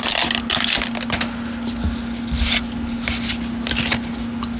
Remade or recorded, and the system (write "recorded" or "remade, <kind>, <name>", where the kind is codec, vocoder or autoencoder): recorded